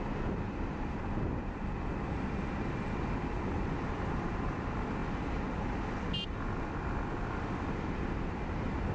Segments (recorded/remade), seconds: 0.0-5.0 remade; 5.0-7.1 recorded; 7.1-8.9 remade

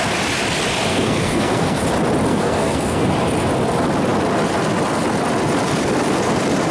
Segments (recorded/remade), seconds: 0.0-0.9 recorded; 0.9-1.8 remade; 1.8-2.3 recorded; 2.3-3.1 remade; 3.1-6.7 recorded

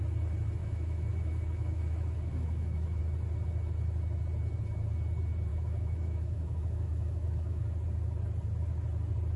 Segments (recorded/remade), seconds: 0.0-0.6 recorded; 0.6-3.0 remade; 3.0-5.5 recorded; 5.5-7.6 remade; 7.6-9.4 recorded

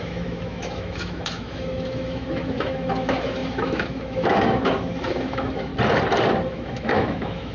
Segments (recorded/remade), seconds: 0.0-5.7 remade; 5.7-6.5 recorded; 6.5-7.5 remade

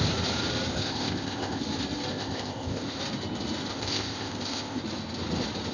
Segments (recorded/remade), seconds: 0.0-0.7 recorded; 0.7-1.6 remade; 1.6-2.1 recorded; 2.1-3.0 remade; 3.0-3.7 recorded; 3.7-4.8 remade; 4.8-5.7 recorded